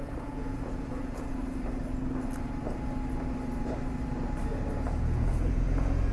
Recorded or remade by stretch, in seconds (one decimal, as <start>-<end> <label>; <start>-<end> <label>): 0.0-1.3 remade; 1.3-5.0 recorded; 5.0-6.1 remade